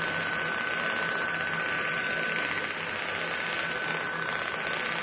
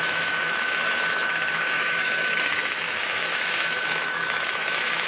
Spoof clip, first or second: second